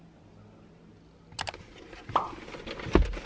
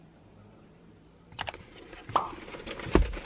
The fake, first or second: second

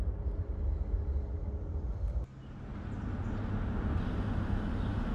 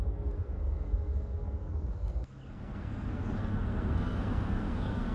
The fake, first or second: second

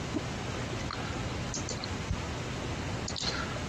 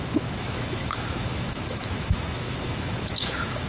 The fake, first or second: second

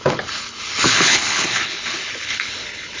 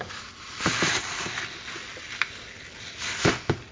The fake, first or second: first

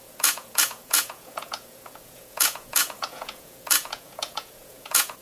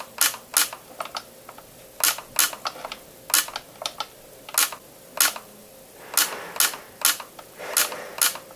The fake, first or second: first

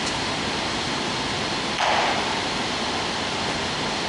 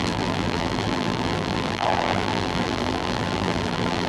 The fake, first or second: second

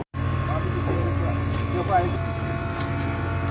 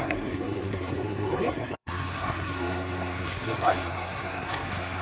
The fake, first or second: second